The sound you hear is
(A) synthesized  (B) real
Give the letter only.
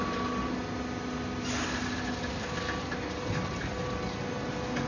B